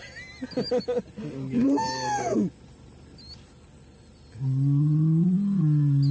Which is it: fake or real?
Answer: real